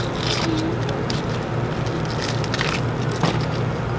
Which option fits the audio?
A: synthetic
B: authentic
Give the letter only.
B